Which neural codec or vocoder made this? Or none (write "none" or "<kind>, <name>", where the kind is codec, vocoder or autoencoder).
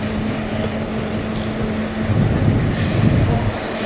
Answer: none